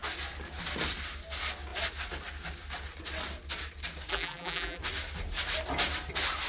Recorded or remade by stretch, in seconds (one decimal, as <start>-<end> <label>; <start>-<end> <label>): 0.0-4.1 recorded; 4.1-4.8 remade; 4.8-6.5 recorded